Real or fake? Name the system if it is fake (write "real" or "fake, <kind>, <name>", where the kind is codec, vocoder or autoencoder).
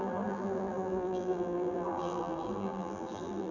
fake, vocoder, BigVGAN v2